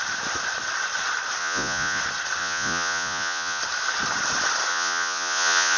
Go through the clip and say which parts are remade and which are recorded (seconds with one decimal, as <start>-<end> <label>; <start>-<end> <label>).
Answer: 0.0-1.4 recorded; 1.4-2.0 remade; 2.0-2.4 recorded; 2.4-3.6 remade; 3.6-4.7 recorded; 4.7-5.8 remade